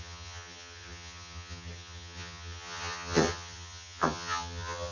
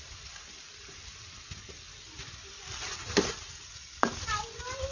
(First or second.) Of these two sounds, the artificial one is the first